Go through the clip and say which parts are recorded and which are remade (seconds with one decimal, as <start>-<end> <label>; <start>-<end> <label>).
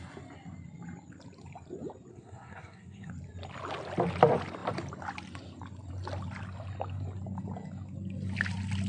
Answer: 0.0-2.1 recorded; 2.1-3.1 remade; 3.1-8.9 recorded